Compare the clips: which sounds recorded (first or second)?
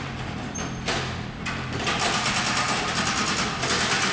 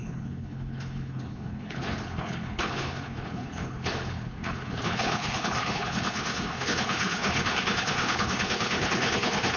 first